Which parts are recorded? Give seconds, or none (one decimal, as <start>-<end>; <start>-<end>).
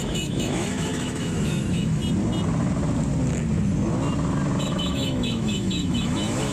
2.0-4.6